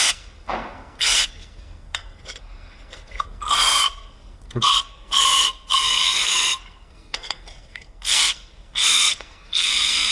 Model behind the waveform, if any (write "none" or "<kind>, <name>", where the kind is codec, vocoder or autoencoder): codec, SNAC